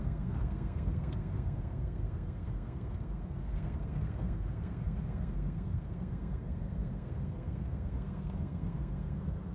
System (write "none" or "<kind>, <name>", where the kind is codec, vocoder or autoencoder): codec, SNAC